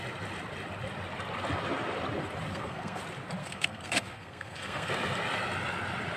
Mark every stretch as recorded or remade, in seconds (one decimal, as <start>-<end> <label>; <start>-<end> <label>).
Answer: 0.0-2.5 recorded; 2.5-3.0 remade; 3.0-3.4 recorded; 3.4-4.9 remade; 4.9-6.2 recorded